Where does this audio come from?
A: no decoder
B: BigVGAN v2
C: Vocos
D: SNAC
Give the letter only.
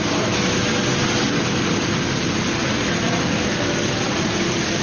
A